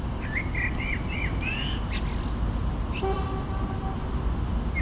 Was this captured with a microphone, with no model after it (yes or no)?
yes